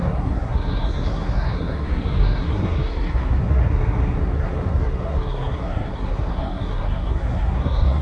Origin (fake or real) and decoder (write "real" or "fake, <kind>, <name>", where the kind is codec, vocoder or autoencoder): fake, codec, SNAC